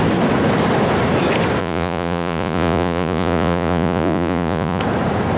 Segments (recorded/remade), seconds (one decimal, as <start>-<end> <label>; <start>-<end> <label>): 0.0-1.6 recorded; 1.6-4.8 remade; 4.8-5.4 recorded